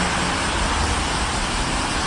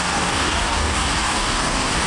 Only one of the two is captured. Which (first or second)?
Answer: first